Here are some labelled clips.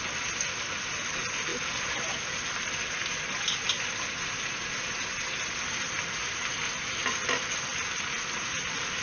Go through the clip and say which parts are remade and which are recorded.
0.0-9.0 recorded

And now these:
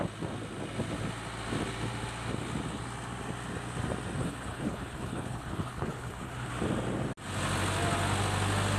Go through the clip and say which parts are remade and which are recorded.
0.0-4.2 recorded; 4.2-6.5 remade; 6.5-8.8 recorded